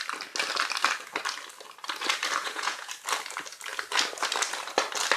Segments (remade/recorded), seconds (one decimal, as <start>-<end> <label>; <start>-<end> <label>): 0.0-2.4 recorded; 2.4-2.9 remade; 2.9-5.2 recorded